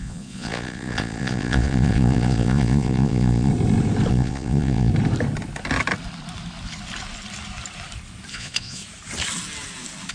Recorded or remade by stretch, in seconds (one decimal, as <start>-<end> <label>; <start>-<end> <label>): 0.0-3.5 remade; 3.5-4.1 recorded; 4.1-4.9 remade; 4.9-8.3 recorded; 8.3-8.8 remade; 8.8-10.1 recorded